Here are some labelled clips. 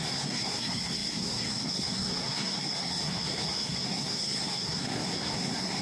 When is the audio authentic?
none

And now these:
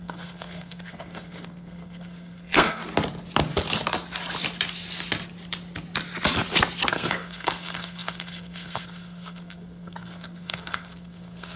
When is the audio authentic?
2.8-6.9

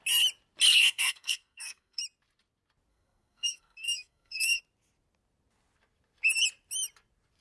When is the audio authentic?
0.0-0.7; 2.0-2.9; 4.6-7.4

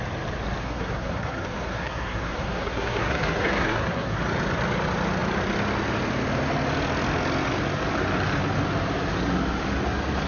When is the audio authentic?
0.0-0.6; 4.2-10.3

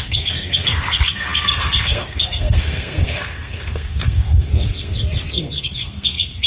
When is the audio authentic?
none